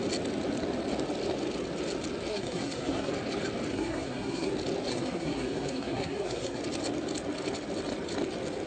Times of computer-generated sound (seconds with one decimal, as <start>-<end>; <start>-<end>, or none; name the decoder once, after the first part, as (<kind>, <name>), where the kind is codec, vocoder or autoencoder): 2.3-3.1 (codec, SNAC); 3.7-4.5; 4.9-6.6

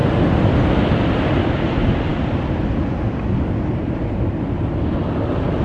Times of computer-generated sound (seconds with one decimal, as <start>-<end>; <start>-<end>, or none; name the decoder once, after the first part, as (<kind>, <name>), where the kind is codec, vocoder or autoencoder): none

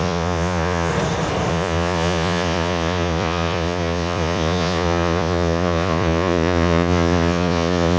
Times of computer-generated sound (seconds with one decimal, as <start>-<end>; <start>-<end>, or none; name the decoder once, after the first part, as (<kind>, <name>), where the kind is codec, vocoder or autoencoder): 0.0-0.9 (vocoder, Vocos); 1.5-8.0

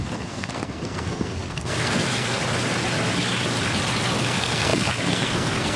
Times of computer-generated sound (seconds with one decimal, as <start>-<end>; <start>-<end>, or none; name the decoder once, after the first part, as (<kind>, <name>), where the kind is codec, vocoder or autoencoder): 0.0-2.4 (codec, SNAC); 4.2-5.8